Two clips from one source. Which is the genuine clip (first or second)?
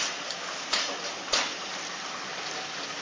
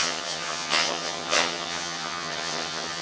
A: first